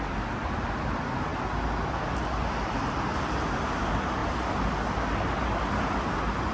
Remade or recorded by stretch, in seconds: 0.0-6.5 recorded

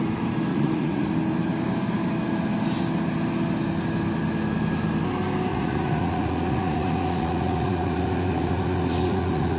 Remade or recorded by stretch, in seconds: 0.0-0.5 recorded; 0.5-1.1 remade; 1.1-5.5 recorded; 5.5-9.6 remade